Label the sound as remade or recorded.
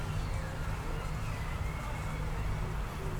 recorded